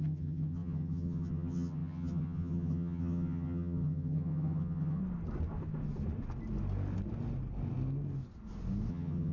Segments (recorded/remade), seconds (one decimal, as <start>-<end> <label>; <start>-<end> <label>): 0.0-5.0 remade; 5.0-8.9 recorded; 8.9-9.3 remade